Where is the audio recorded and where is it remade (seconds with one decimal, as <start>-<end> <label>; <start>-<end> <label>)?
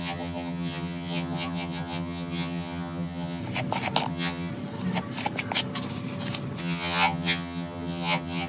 0.0-3.4 remade; 3.4-4.1 recorded; 4.1-4.5 remade; 4.5-6.6 recorded; 6.6-8.5 remade